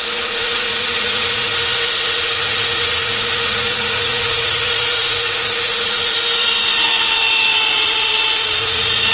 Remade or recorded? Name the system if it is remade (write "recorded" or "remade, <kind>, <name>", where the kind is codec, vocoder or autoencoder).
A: remade, vocoder, Vocos